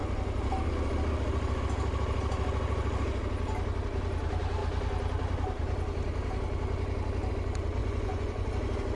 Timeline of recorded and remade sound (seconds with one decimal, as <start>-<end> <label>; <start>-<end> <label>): 0.0-7.8 recorded; 7.8-8.5 remade; 8.5-9.0 recorded